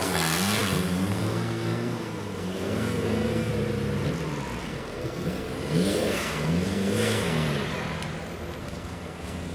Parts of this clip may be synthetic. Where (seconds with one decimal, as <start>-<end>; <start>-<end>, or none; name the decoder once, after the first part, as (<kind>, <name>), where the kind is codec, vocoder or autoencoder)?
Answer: 0.0-3.5 (codec, SNAC); 4.6-7.5; 8.6-9.5